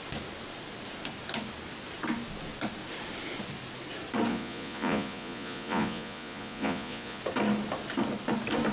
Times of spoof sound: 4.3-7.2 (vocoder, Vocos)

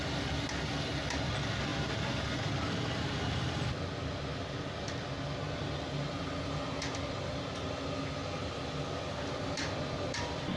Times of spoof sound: none

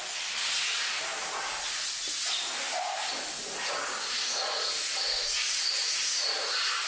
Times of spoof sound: 5.1-5.7 (codec, DAC)